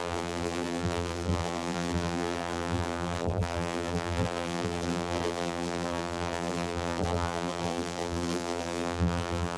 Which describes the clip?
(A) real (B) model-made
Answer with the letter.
B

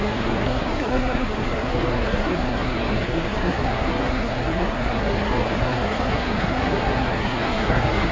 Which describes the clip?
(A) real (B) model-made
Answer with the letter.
B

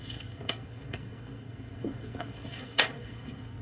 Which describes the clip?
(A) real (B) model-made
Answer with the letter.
B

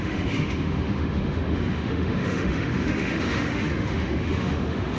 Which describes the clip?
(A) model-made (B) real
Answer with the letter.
A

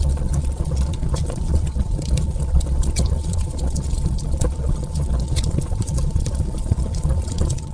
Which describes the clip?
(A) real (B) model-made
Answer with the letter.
B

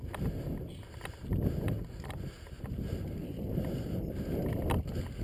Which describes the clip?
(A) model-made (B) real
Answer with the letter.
B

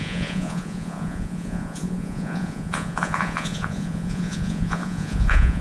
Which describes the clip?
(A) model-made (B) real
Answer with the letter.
A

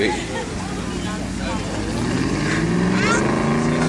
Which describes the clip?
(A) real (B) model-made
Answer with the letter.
A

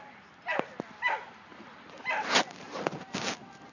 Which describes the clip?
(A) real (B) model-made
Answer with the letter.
A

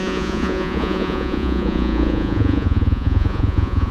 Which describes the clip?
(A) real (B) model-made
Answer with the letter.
B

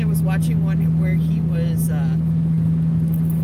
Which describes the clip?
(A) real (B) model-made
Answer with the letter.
A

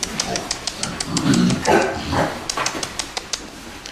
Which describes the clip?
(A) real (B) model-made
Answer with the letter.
A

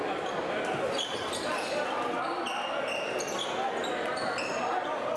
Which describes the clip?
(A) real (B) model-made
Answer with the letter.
A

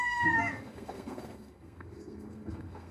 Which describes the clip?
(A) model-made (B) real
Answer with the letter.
A